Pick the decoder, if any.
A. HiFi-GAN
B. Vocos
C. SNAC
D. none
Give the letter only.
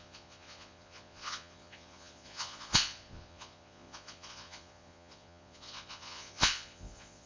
B